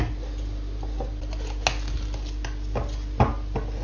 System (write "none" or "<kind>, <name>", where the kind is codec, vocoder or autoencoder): none